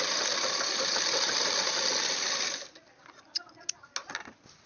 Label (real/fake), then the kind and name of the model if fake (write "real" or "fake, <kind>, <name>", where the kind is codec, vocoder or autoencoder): real